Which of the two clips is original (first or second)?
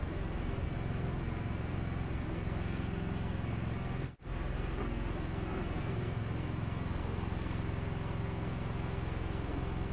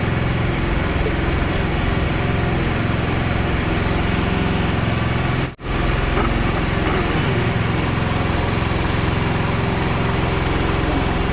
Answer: second